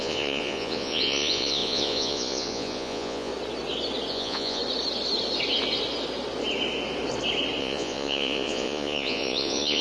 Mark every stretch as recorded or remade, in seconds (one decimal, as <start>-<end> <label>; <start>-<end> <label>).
0.0-3.3 remade; 3.3-4.1 recorded; 4.1-4.6 remade; 4.6-7.6 recorded; 7.6-9.8 remade